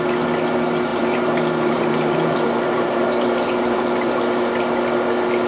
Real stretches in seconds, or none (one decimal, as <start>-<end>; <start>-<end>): 0.0-0.9; 4.2-5.5